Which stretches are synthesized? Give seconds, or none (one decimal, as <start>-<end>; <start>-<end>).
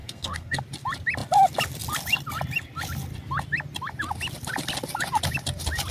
0.0-0.6